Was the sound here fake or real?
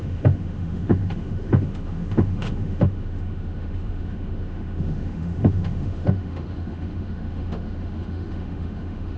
fake